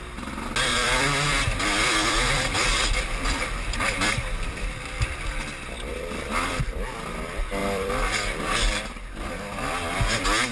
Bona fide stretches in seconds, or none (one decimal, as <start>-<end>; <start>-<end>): 0.0-0.7; 5.3-5.9; 6.7-7.6; 9.3-10.5